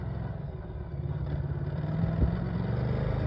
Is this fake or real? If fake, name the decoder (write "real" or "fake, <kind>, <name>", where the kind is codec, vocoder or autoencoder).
real